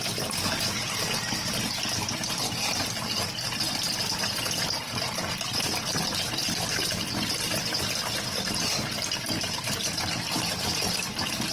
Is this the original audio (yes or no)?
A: no